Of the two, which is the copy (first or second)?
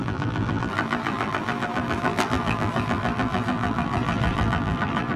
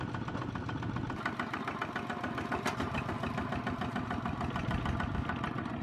first